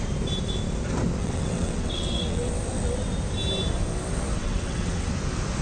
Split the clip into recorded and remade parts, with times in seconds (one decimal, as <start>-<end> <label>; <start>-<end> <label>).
0.0-1.2 recorded; 1.2-2.5 remade; 2.5-4.4 recorded; 4.4-5.1 remade; 5.1-5.6 recorded